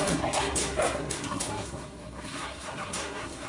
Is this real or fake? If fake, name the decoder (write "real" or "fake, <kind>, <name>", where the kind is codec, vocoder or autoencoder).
fake, codec, SNAC